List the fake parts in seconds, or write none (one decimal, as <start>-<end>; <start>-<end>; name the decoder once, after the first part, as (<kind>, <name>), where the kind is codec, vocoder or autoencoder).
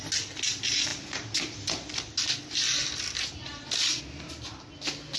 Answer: none